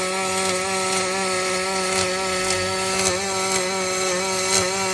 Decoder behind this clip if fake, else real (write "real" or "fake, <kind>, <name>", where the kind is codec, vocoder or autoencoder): real